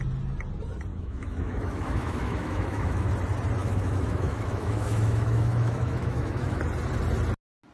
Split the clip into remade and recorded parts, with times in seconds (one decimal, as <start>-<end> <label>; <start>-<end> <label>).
0.0-0.9 recorded; 0.9-3.1 remade; 3.1-3.6 recorded; 3.6-6.6 remade; 6.6-7.7 recorded